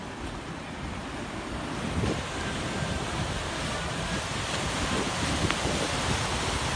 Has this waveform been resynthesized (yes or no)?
no